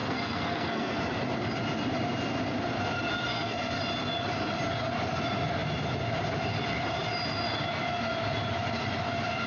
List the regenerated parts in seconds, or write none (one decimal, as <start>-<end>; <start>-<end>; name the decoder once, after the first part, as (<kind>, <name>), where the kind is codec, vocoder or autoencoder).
0.0-1.0 (codec, SNAC); 3.3-3.8